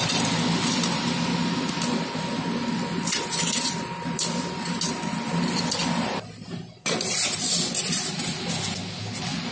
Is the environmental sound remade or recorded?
recorded